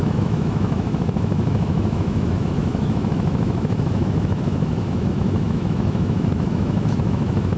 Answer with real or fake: fake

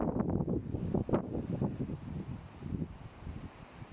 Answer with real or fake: real